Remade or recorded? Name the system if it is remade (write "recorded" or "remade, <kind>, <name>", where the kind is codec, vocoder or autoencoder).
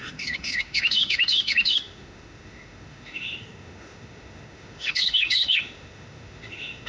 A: remade, autoencoder, DAC-VAE